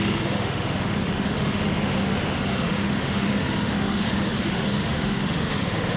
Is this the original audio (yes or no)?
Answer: no